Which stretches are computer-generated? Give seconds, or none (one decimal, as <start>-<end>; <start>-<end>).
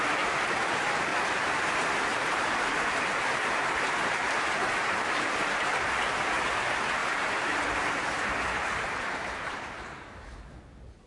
1.1-1.6; 7.0-9.6